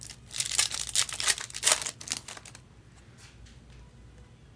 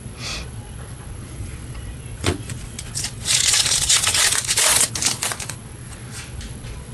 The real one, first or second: first